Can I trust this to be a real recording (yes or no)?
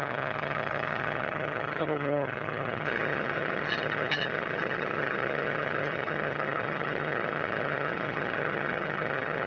no